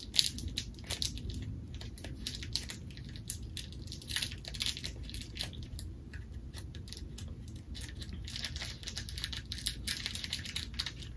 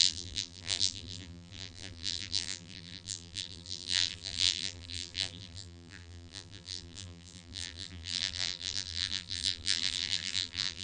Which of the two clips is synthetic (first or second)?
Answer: second